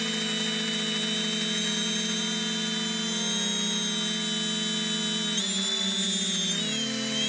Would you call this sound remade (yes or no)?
no